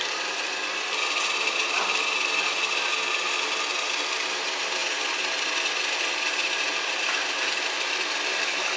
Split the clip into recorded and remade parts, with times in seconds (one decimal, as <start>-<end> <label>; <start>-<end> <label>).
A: 0.0-8.8 recorded